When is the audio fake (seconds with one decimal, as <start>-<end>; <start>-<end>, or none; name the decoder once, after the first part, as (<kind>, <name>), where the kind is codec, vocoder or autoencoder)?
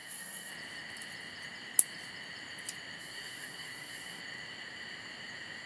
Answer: 0.0-0.5 (codec, SNAC); 3.0-4.2